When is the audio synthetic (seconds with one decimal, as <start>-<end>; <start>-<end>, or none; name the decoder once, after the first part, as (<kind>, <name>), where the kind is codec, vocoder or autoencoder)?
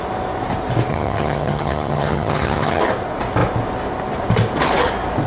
0.9-2.8 (vocoder, HiFi-GAN)